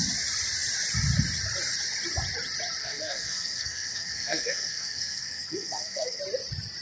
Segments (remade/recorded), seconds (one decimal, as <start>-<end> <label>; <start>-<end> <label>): 0.0-2.8 recorded; 2.8-6.2 remade; 6.2-6.8 recorded